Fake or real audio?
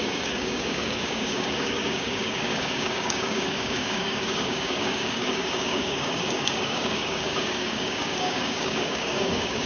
fake